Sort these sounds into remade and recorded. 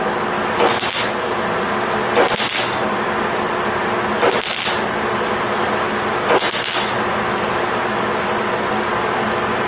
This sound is recorded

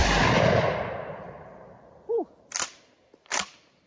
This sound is recorded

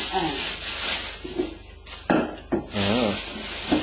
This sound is recorded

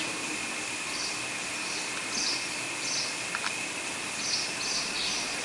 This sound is recorded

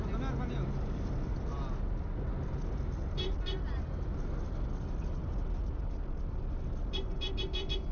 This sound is recorded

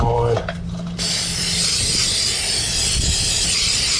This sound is recorded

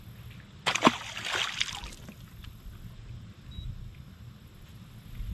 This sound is recorded